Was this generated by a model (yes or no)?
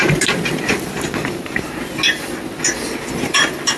no